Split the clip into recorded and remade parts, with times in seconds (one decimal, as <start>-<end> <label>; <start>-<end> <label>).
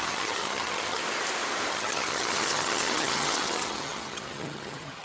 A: 0.0-1.0 remade; 1.0-1.7 recorded; 1.7-5.0 remade